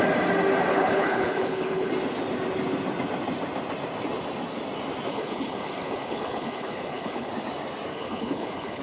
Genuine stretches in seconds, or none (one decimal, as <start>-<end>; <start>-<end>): 0.0-0.7; 1.9-5.1; 7.3-7.9